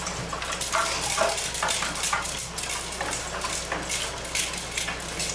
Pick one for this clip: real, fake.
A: real